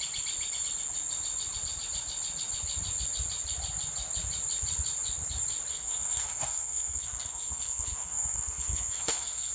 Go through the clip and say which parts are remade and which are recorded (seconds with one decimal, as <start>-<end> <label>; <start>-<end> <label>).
0.0-5.7 recorded; 5.7-9.5 remade